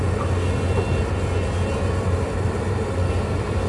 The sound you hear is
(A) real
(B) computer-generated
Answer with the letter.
A